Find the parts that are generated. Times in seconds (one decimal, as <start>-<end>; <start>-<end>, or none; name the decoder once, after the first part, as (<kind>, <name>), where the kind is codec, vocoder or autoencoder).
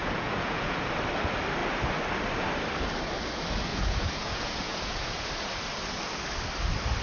0.0-0.9 (vocoder, Vocos); 3.7-5.3